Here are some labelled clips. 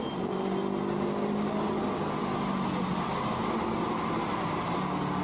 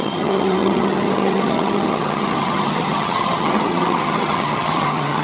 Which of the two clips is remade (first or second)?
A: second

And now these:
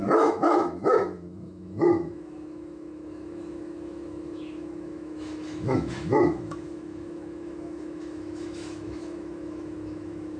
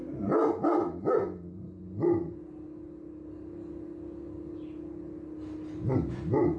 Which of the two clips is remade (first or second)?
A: first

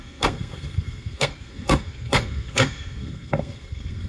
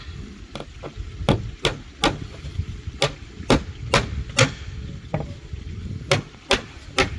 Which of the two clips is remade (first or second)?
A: first